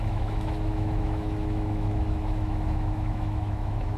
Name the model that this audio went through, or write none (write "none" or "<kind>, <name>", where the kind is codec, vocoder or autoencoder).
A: autoencoder, DAC-VAE